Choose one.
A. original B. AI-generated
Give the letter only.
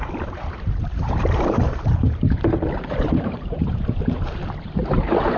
B